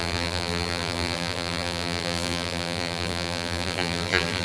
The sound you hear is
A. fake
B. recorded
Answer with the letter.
A